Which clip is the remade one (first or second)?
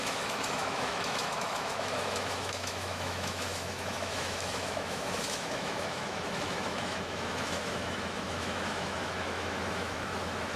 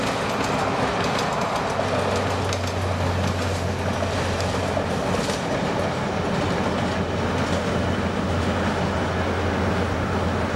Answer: first